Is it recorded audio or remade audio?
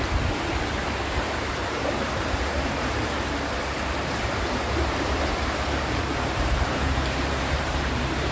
remade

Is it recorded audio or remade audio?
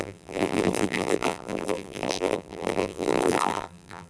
remade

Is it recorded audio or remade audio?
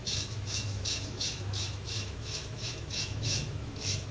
remade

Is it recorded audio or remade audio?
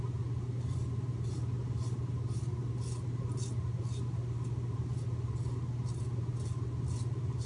recorded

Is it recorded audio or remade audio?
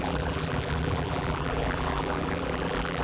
remade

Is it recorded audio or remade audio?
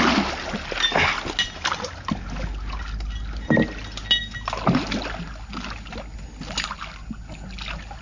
recorded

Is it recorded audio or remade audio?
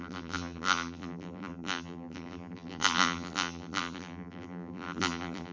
remade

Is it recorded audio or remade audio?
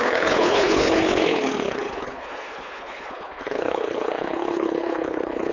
remade